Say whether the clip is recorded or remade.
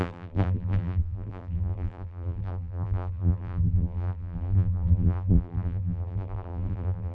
remade